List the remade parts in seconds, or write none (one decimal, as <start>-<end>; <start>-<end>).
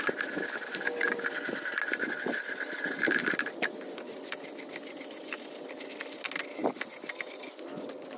none